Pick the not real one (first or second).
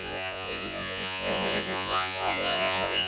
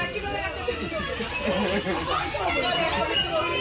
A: first